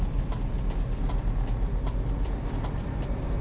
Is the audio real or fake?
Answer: real